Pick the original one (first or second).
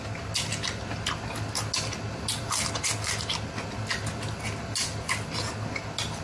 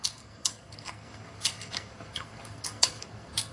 first